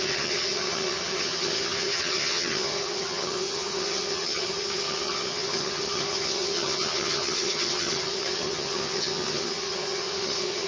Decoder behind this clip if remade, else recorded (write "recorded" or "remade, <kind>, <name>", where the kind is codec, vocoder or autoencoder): remade, vocoder, HiFi-GAN